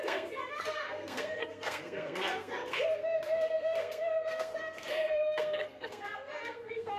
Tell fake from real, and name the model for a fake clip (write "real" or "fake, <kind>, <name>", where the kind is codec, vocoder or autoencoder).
fake, codec, SNAC